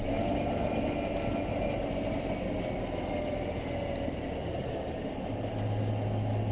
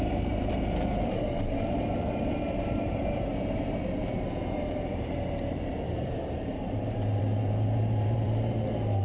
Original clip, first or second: first